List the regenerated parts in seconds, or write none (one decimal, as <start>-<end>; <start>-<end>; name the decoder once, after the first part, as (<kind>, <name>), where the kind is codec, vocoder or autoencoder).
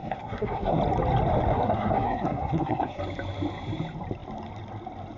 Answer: 0.0-0.8 (codec, SNAC); 1.5-3.0